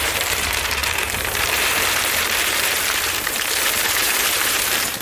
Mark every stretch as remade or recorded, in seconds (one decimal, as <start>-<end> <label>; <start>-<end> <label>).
0.0-5.0 remade